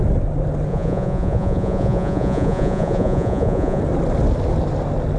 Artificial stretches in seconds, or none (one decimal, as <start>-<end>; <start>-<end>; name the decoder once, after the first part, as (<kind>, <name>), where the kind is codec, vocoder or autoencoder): 0.7-3.8 (vocoder, Vocos)